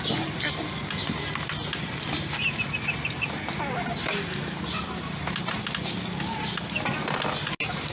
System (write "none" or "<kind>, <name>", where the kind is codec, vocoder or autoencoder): none